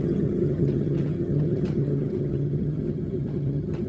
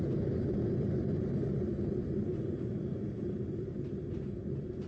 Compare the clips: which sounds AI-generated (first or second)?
first